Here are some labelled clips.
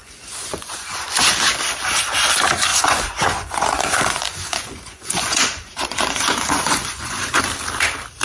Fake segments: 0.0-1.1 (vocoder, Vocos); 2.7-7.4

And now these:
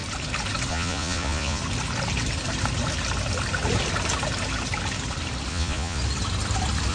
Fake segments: 0.7-1.6 (vocoder, Vocos); 5.5-6.0

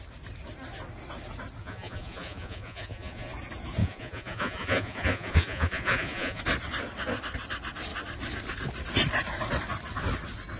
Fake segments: 1.6-3.3 (vocoder, Vocos); 3.8-6.4

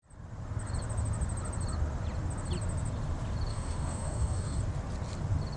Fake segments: 3.5-4.6 (codec, DAC)